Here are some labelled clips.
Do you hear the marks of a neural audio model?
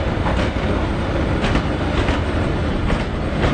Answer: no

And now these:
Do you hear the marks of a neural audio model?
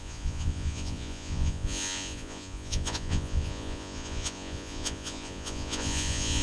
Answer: yes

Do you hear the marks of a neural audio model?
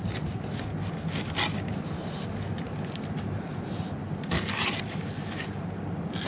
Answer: no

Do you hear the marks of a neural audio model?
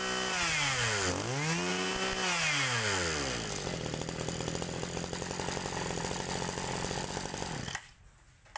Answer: no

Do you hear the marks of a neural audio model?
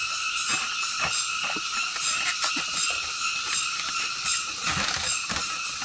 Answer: no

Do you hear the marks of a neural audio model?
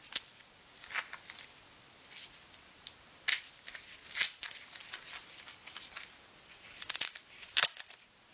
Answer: no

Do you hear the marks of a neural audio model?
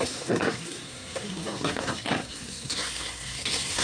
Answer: yes